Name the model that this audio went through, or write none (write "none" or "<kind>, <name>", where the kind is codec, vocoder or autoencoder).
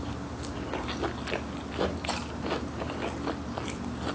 none